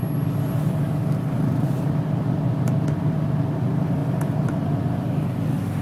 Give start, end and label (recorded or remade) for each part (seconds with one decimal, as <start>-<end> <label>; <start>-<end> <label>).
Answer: 0.0-5.8 recorded